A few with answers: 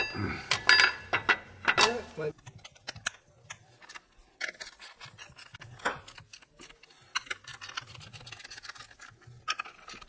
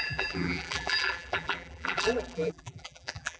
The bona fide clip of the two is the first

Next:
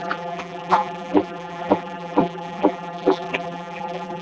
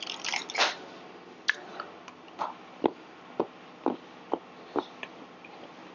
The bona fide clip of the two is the second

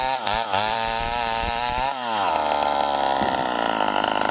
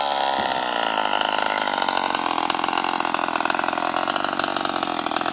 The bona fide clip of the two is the second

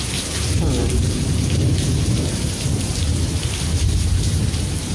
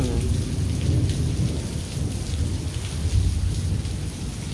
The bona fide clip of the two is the second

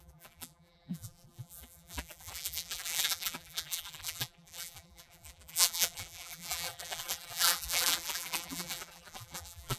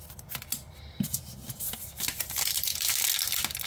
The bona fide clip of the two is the second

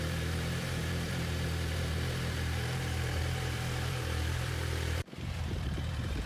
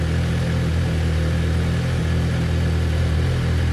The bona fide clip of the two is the second